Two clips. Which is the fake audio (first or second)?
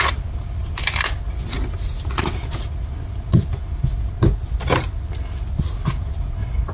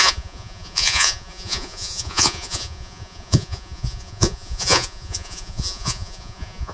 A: second